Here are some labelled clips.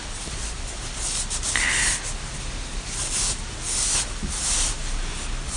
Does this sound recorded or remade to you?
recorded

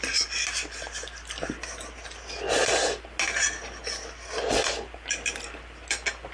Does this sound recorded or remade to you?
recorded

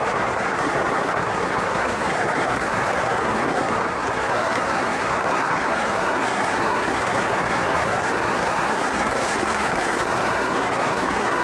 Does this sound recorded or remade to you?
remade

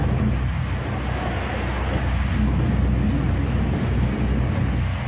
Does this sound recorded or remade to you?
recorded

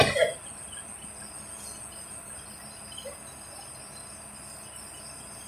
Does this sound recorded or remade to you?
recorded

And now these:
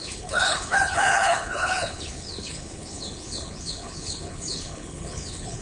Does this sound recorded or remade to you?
remade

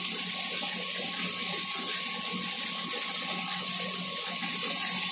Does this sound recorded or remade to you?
recorded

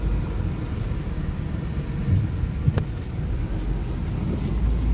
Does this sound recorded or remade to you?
recorded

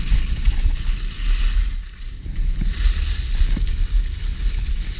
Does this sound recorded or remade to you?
recorded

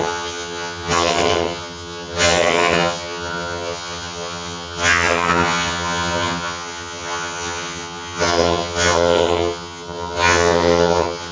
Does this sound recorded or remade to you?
remade